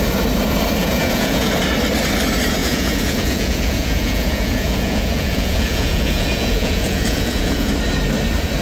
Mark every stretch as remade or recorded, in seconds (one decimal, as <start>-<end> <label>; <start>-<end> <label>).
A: 0.0-0.8 recorded; 0.8-1.5 remade; 1.5-2.6 recorded; 2.6-7.7 remade; 7.7-8.6 recorded